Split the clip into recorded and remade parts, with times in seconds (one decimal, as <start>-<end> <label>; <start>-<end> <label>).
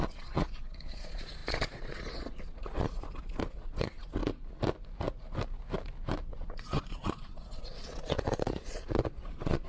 0.0-4.2 remade; 4.2-6.3 recorded; 6.3-9.7 remade